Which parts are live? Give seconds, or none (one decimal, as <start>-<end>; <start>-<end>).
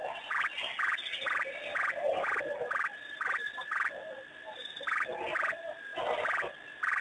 0.0-7.0